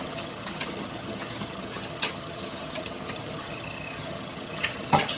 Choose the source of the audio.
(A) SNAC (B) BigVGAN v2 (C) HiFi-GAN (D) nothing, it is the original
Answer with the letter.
C